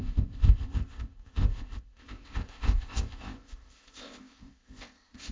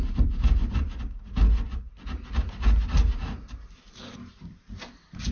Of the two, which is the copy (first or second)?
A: first